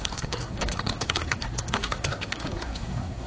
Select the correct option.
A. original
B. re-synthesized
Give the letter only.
B